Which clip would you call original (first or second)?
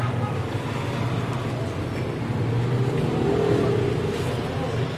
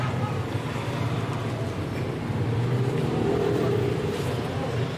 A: first